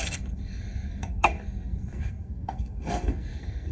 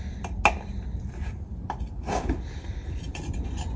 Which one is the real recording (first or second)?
second